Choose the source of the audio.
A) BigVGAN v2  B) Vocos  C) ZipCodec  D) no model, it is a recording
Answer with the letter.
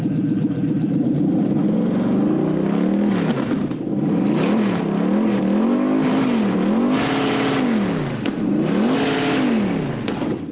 D